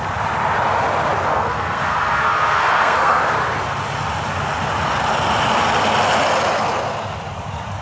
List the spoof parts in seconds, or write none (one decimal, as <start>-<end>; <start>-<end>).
1.3-3.2